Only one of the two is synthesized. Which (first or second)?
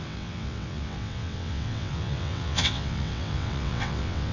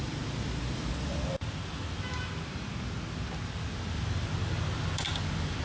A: first